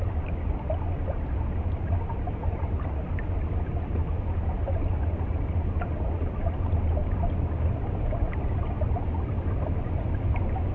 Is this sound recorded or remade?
recorded